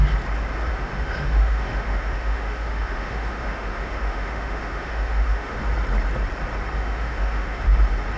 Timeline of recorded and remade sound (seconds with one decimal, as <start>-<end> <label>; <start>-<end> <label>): 0.0-0.7 recorded; 0.7-5.6 remade; 5.6-6.8 recorded; 6.8-7.6 remade; 7.6-8.2 recorded